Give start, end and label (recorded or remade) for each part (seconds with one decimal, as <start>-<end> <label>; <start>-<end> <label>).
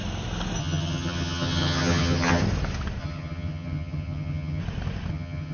0.0-0.6 recorded; 0.6-2.4 remade; 2.4-3.0 recorded; 3.0-4.6 remade; 4.6-5.1 recorded; 5.1-5.5 remade